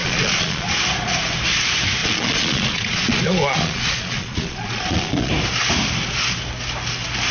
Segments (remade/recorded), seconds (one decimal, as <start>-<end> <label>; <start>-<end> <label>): 0.0-0.8 remade; 0.8-2.0 recorded; 2.0-5.3 remade; 5.3-7.3 recorded